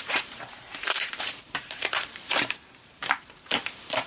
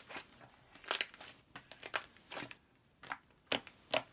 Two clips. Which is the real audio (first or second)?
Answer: second